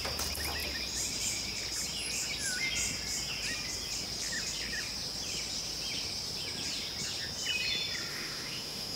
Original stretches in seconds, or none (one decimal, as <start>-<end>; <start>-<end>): 0.0-8.1